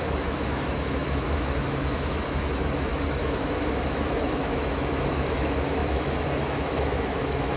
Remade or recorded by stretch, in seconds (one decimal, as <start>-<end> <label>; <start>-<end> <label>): 0.0-7.6 remade